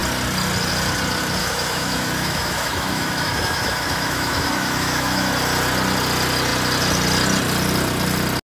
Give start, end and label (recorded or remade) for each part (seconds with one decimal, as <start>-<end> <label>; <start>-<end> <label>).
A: 0.0-1.4 recorded; 1.4-5.3 remade; 5.3-8.5 recorded